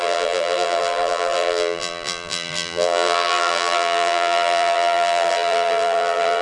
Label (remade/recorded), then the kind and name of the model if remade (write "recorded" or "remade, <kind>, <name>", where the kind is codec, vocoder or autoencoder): remade, vocoder, BigVGAN v2